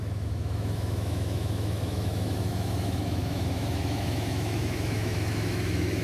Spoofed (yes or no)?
yes